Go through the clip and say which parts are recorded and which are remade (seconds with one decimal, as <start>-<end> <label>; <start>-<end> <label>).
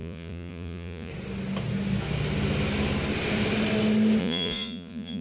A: 0.0-1.1 remade; 1.1-4.2 recorded; 4.2-5.2 remade